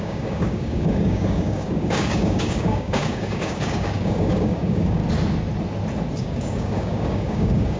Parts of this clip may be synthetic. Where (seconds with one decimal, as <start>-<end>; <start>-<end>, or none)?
0.0-5.0; 6.2-7.8